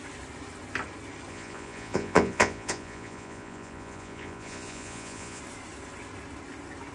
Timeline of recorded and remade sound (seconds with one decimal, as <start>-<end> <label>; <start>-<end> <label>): 0.0-1.3 recorded; 1.3-5.4 remade; 5.4-6.9 recorded